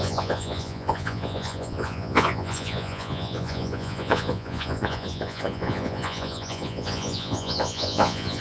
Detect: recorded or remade remade